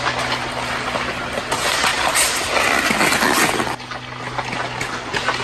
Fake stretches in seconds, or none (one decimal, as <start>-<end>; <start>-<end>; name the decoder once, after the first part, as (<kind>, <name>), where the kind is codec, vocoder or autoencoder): 1.9-2.5 (vocoder, BigVGAN v2)